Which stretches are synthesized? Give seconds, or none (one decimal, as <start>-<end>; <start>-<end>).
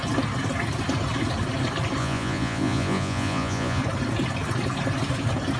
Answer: 2.0-3.8